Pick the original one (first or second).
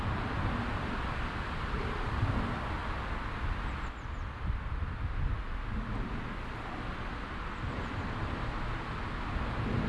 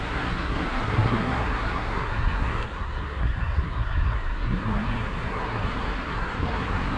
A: first